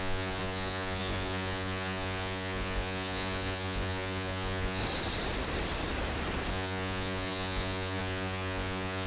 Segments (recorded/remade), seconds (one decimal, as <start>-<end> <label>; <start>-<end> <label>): 0.0-4.8 remade; 4.8-6.5 recorded; 6.5-9.1 remade